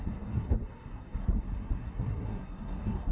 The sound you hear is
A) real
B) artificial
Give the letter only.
B